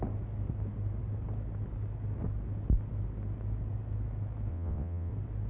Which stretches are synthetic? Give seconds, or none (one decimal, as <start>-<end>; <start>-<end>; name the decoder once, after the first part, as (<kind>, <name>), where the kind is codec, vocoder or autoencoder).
4.5-5.1 (vocoder, WaveNeXt)